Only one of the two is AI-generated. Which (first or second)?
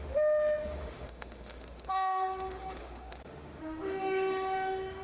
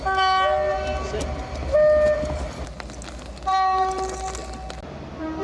first